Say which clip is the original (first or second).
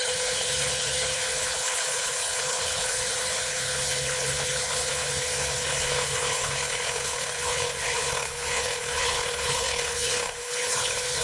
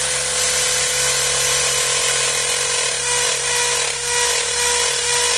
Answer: second